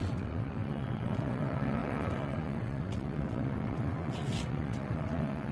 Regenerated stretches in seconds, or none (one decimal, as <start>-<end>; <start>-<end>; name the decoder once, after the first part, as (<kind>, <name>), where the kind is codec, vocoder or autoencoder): 0.0-5.5 (vocoder, WaveNeXt)